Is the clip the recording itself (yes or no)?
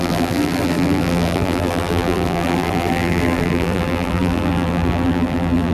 no